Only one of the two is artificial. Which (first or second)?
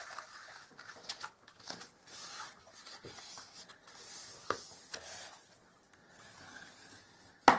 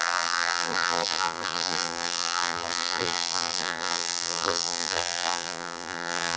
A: second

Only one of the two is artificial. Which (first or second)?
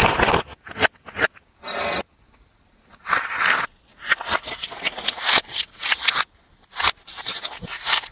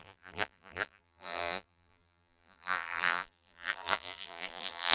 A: second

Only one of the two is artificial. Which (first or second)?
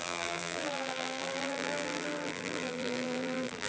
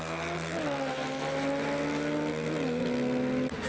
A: first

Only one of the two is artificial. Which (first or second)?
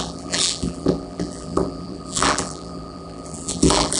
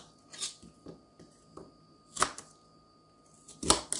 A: first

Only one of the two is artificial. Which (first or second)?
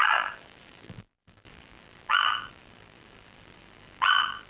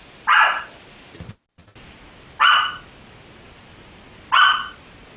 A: first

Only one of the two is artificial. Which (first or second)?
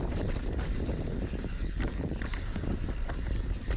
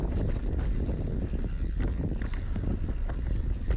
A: first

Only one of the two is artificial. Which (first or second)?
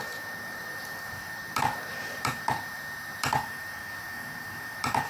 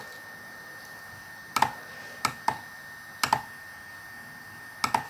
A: first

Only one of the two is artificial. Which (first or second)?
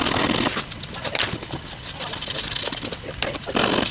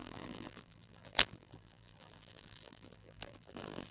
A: second